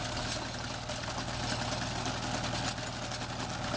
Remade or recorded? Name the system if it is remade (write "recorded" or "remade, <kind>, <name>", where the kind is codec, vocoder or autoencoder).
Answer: recorded